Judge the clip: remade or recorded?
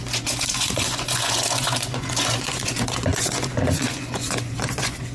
remade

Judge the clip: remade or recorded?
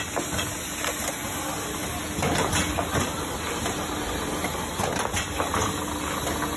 recorded